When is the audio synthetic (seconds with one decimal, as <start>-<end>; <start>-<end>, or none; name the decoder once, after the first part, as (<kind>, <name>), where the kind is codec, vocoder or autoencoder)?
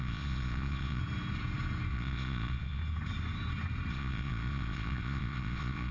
0.0-1.0 (vocoder, Vocos); 1.9-2.8; 3.9-5.9